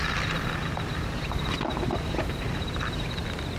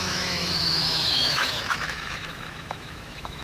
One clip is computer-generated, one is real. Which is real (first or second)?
first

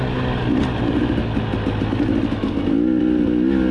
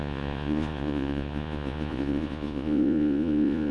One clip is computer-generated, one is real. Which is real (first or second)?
first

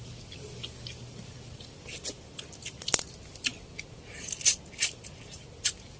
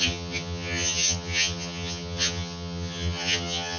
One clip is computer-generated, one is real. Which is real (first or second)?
first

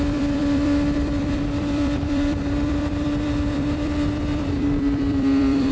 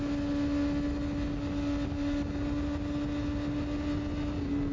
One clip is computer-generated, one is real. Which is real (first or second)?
second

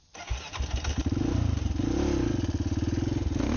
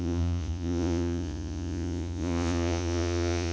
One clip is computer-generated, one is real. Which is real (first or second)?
first